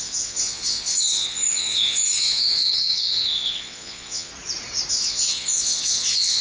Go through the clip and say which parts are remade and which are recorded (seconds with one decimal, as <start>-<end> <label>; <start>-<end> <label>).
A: 0.0-4.3 remade; 4.3-4.9 recorded; 4.9-6.4 remade